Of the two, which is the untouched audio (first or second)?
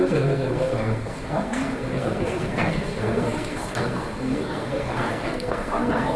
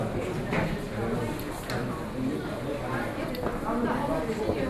second